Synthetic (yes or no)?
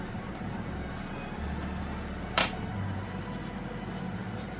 no